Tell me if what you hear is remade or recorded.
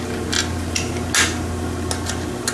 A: recorded